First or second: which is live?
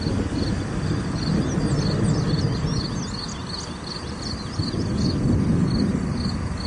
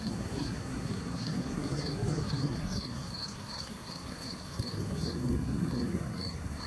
first